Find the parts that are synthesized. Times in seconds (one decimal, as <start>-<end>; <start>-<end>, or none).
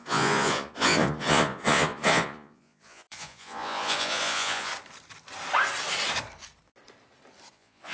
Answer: 0.0-4.7; 7.5-7.9